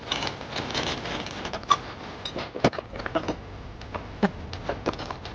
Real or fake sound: real